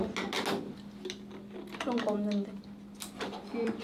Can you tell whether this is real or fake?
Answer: real